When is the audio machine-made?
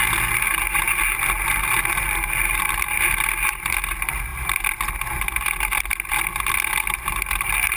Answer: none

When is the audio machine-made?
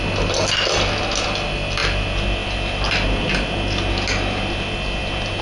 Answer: none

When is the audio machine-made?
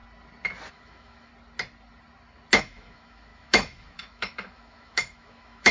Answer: 0.7-1.3 (autoencoder, DAC-VAE); 2.6-5.7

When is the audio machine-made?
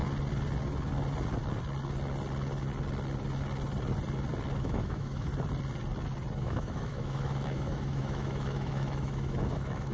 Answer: 4.6-5.3 (autoencoder, DAC-VAE); 6.4-9.9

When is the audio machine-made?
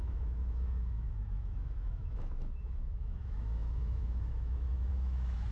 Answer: 0.0-5.5 (autoencoder, DAC-VAE)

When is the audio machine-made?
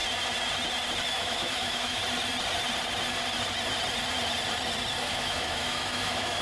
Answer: 1.1-2.0 (autoencoder, DAC-VAE); 5.0-6.4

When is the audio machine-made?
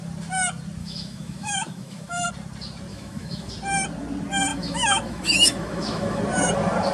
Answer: 0.8-2.3 (autoencoder, DAC-VAE); 2.9-3.5; 4.5-6.2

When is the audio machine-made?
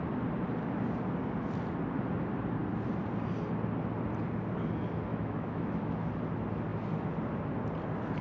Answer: 5.1-6.1 (autoencoder, DAC-VAE)